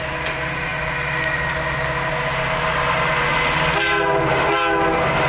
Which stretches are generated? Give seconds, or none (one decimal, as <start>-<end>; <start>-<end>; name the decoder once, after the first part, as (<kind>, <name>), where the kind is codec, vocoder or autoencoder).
none